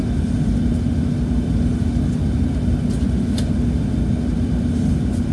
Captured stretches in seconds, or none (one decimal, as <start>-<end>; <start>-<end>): 0.0-5.3